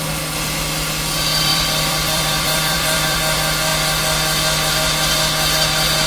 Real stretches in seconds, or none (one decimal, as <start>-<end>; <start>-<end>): 0.0-1.5; 3.2-6.1